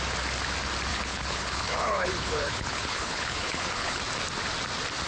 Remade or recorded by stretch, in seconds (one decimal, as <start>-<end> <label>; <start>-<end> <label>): 0.0-0.9 recorded; 0.9-4.0 remade; 4.0-5.1 recorded